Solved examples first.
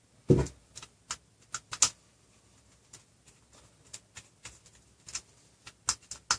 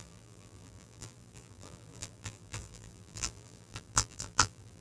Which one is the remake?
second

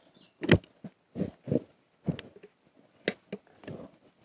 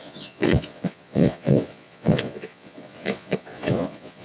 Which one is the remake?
second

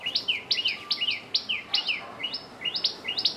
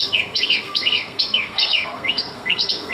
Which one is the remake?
second